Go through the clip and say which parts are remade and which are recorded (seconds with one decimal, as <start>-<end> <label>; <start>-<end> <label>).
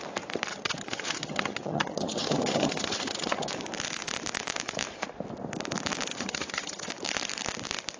0.0-0.5 recorded; 0.5-3.5 remade; 3.5-6.1 recorded; 6.1-6.9 remade; 6.9-8.0 recorded